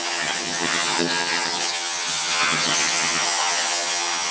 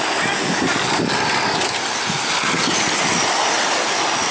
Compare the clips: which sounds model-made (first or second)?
first